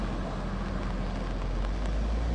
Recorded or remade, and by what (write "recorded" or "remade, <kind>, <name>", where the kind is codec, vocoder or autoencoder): recorded